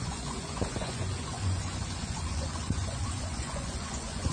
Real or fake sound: fake